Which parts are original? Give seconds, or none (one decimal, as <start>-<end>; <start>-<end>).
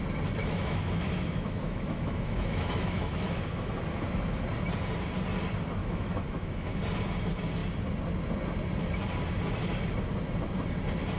0.0-0.4; 3.7-5.8; 6.8-11.2